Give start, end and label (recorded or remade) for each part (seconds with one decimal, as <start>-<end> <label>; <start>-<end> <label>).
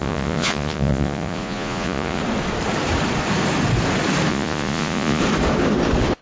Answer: 0.0-2.2 remade; 2.2-4.3 recorded; 4.3-5.2 remade; 5.2-6.2 recorded